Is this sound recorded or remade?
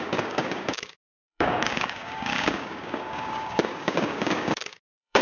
remade